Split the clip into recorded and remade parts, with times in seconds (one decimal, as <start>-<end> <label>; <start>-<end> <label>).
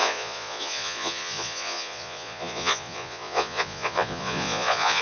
0.0-5.0 remade